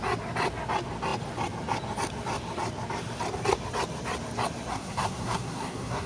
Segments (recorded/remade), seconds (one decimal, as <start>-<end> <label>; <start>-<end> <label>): 0.0-4.7 recorded; 4.7-6.1 remade